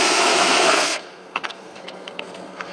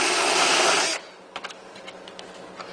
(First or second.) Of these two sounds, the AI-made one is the first